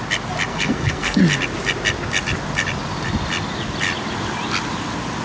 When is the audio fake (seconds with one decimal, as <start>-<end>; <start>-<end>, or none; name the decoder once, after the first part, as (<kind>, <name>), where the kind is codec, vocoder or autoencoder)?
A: 0.5-1.2 (codec, SNAC)